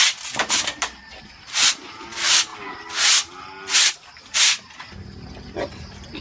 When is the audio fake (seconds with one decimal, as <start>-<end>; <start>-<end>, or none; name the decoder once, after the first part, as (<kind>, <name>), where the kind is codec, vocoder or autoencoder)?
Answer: none